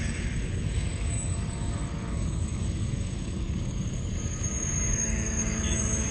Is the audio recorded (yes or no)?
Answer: no